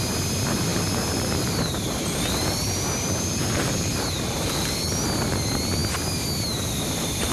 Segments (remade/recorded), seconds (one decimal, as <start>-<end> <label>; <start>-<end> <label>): 0.0-0.7 recorded; 0.7-5.0 remade; 5.0-7.3 recorded